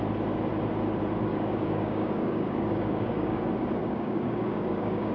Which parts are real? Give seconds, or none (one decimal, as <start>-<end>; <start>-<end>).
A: 0.0-1.3; 3.4-3.8